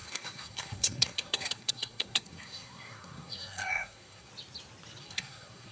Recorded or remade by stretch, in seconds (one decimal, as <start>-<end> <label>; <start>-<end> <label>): 0.0-4.3 remade; 4.3-5.0 recorded; 5.0-5.7 remade